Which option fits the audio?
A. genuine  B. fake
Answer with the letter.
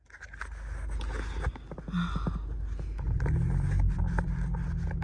A